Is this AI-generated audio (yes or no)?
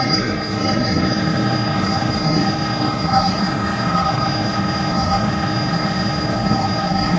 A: yes